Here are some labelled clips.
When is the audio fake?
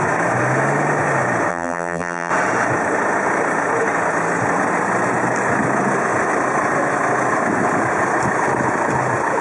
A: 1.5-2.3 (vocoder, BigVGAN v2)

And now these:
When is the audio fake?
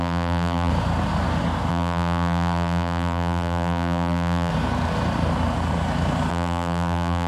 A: 0.0-0.7 (vocoder, BigVGAN v2); 1.7-4.5; 6.3-7.3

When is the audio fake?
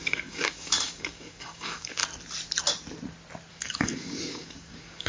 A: 0.0-2.0 (codec, DAC); 3.5-5.1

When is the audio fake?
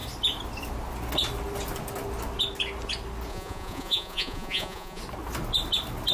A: 3.3-5.0 (vocoder, Vocos)